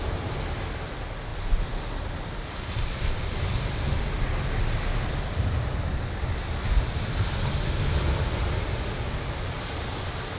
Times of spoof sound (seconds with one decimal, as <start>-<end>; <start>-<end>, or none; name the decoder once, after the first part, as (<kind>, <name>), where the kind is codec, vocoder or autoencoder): none